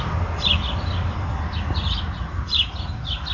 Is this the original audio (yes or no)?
yes